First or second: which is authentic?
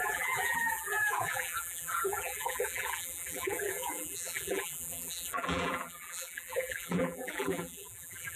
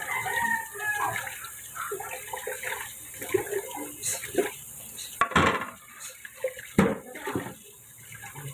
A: second